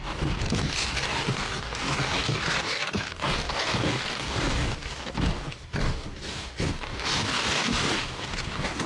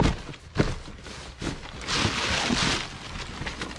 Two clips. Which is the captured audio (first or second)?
second